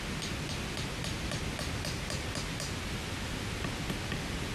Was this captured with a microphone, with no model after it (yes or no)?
yes